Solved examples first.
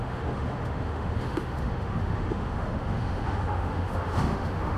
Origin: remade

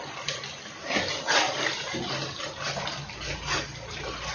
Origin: recorded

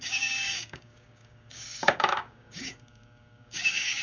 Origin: remade